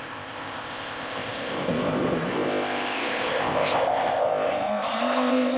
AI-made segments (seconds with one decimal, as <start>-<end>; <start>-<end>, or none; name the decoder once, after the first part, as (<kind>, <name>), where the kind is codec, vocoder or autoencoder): 0.0-5.6 (codec, ZipCodec)